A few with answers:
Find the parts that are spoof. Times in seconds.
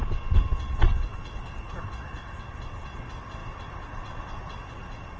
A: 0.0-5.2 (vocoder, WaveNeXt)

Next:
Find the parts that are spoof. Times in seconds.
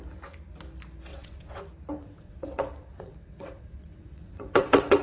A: 1.1-1.6 (vocoder, WaveNeXt); 2.0-5.0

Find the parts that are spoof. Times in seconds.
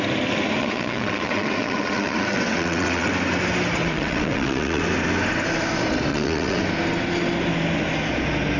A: 0.6-3.1 (vocoder, WaveNeXt); 3.8-4.8; 6.1-6.6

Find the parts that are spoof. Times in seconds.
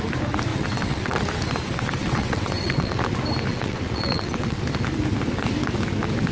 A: 0.5-1.2 (vocoder, WaveNeXt); 2.0-3.0; 3.5-4.6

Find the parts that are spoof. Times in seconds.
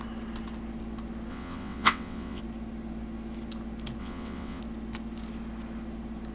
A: 1.3-2.4 (vocoder, WaveNeXt); 4.0-4.6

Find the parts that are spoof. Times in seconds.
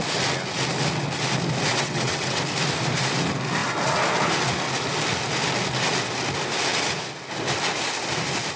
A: 1.7-2.4 (vocoder, WaveNeXt)